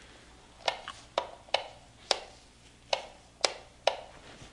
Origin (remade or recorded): recorded